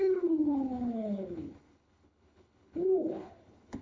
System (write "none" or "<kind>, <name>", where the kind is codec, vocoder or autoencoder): codec, HILCodec